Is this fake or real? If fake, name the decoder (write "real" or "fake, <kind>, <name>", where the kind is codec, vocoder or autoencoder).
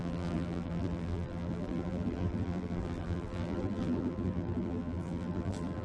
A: fake, vocoder, BigVGAN v2